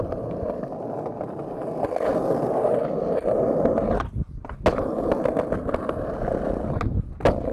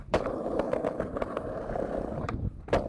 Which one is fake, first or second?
second